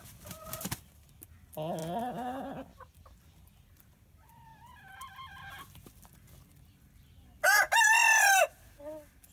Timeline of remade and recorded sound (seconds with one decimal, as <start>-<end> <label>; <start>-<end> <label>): 0.0-9.3 recorded